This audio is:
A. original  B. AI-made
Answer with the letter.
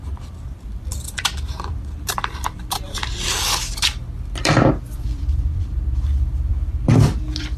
B